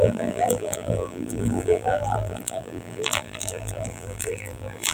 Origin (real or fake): fake